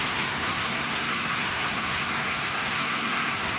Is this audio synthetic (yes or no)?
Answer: yes